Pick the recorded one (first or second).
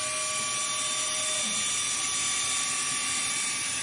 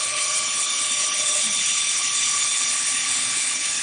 first